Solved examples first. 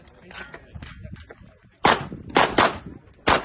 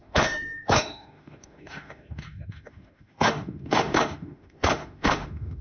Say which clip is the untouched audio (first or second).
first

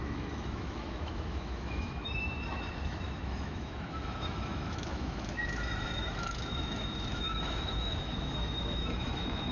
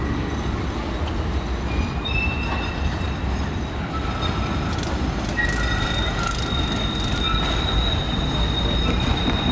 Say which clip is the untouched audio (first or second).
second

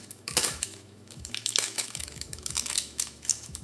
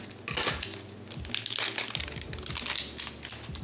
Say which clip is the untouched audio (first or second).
second